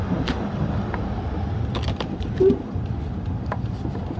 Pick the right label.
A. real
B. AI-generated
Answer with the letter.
B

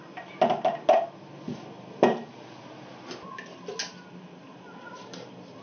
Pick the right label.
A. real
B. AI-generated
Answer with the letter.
A